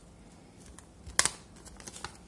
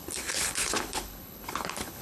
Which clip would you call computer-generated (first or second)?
second